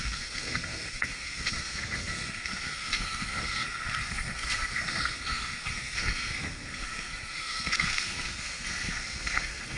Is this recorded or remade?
remade